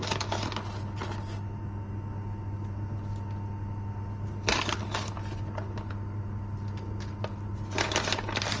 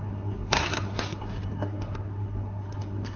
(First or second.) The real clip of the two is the first